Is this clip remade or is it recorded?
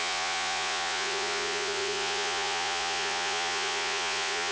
remade